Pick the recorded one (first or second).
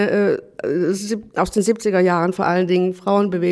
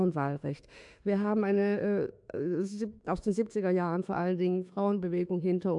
first